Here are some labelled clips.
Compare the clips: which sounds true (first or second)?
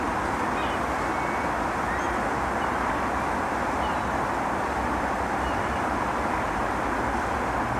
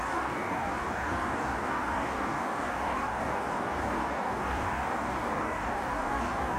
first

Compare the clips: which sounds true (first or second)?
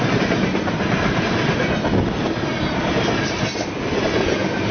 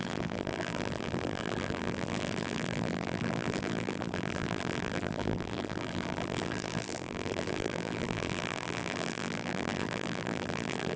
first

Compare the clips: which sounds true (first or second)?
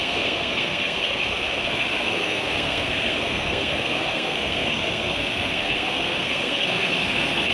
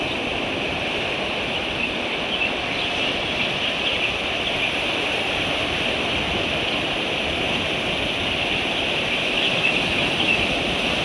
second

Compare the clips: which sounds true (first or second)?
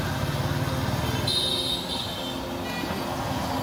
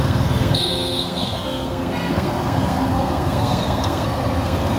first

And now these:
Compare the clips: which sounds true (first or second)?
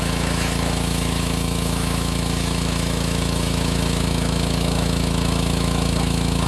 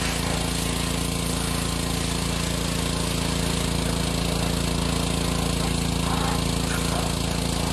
second